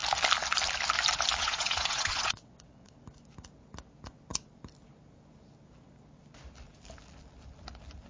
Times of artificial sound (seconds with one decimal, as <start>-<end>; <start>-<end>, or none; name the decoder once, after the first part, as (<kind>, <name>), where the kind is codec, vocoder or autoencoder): 1.4-3.0 (vocoder, WaveNeXt)